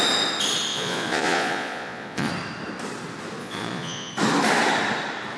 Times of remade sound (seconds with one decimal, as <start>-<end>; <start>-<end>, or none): 0.7-2.3; 3.4-4.1